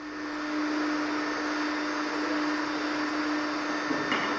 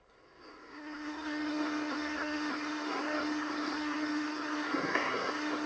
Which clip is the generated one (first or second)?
second